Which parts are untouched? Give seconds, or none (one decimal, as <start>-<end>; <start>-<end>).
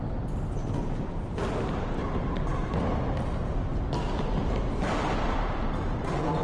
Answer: 0.0-0.6; 1.3-6.4